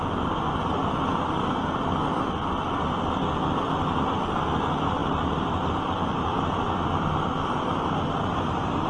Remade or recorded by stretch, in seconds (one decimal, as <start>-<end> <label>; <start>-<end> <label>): 0.0-8.9 recorded